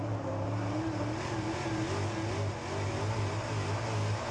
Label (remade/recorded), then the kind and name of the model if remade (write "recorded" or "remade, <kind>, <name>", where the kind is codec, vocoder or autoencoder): recorded